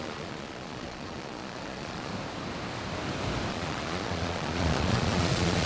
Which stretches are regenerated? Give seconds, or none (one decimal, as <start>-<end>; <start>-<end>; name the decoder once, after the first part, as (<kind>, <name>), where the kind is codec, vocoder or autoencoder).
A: 0.0-2.1 (vocoder, Vocos); 3.5-5.7